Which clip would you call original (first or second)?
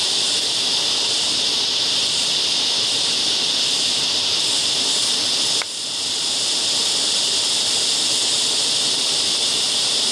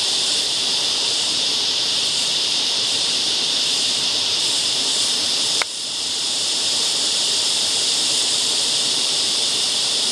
first